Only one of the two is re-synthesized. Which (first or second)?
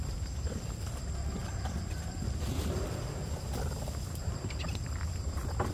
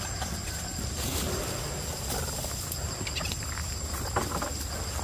first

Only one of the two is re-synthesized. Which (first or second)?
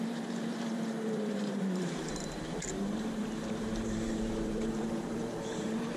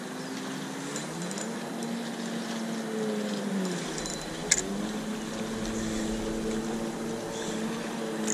first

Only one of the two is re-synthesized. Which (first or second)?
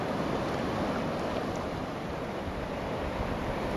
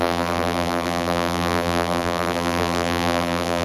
second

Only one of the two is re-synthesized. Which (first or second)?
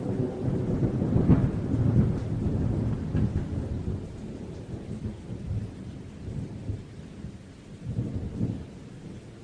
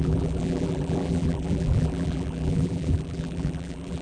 second